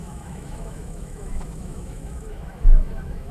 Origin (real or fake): fake